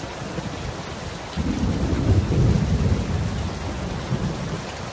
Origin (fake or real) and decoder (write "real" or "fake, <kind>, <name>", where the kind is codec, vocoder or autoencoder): real